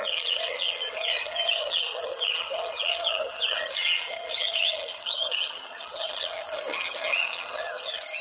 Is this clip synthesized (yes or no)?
yes